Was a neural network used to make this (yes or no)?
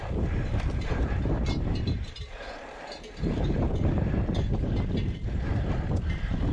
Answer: yes